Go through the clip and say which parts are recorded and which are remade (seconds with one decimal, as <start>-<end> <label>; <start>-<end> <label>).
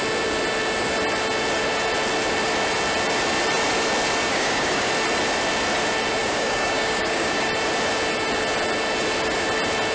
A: 0.0-4.3 recorded; 4.3-4.9 remade; 4.9-6.2 recorded; 6.2-7.5 remade; 7.5-9.9 recorded